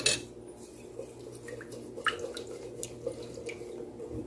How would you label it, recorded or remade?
recorded